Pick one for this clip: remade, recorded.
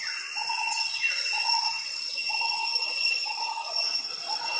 remade